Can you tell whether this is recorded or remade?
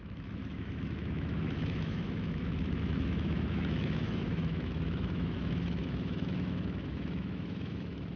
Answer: remade